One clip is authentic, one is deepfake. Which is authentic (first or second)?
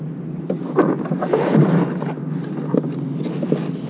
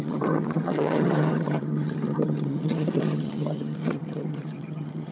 first